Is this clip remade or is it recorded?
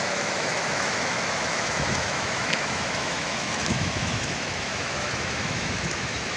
remade